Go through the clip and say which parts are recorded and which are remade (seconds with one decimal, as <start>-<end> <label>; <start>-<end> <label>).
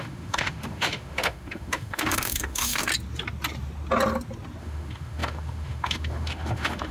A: 0.0-2.9 remade; 2.9-4.6 recorded; 4.6-6.9 remade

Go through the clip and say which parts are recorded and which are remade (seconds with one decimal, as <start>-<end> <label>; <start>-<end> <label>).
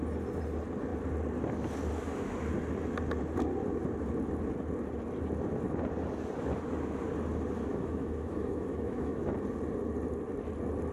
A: 0.0-7.7 recorded; 7.7-9.3 remade; 9.3-10.9 recorded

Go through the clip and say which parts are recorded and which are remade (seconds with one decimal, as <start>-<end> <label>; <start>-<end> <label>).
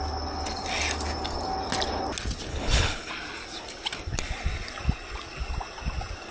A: 0.0-2.5 recorded; 2.5-3.1 remade; 3.1-6.3 recorded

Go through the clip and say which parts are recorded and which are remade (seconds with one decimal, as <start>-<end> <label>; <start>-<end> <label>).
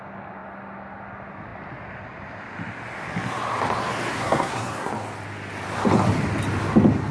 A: 0.0-4.1 recorded; 4.1-4.9 remade; 4.9-7.1 recorded